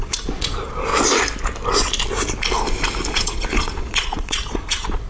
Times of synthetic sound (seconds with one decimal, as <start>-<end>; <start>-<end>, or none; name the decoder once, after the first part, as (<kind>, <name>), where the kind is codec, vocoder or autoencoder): 0.0-0.9 (vocoder, Vocos); 3.1-5.1